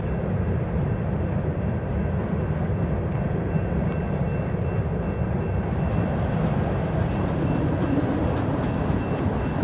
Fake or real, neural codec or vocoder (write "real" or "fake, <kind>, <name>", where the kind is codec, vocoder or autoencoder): real